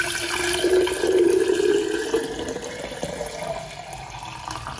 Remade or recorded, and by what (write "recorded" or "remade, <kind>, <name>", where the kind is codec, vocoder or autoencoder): recorded